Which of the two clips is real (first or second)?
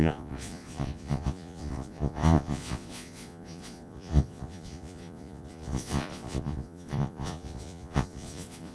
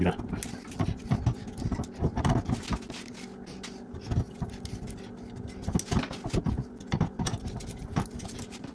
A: second